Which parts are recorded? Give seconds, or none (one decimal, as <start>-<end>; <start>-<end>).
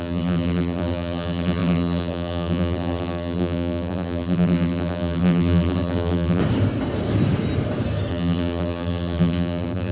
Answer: 6.4-8.1